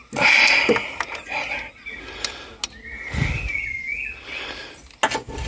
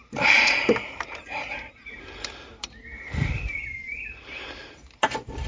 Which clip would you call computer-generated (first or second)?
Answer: second